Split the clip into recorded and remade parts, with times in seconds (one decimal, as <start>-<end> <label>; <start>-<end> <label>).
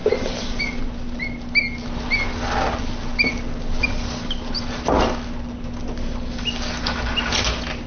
0.0-7.9 recorded